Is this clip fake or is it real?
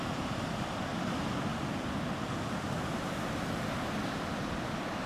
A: real